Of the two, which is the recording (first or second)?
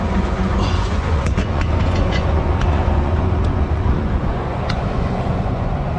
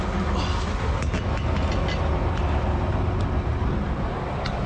second